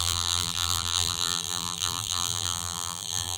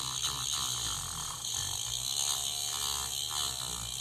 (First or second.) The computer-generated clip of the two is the first